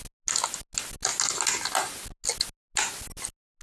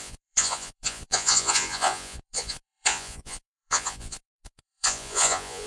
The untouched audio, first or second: first